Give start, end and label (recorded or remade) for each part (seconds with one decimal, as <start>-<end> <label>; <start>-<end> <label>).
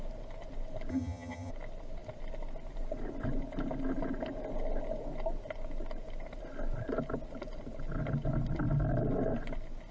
0.0-0.9 recorded; 0.9-1.5 remade; 1.5-9.9 recorded